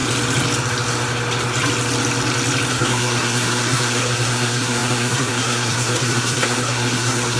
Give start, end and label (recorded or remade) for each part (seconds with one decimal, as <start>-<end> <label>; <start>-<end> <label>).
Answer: 0.0-2.7 recorded; 2.7-7.4 remade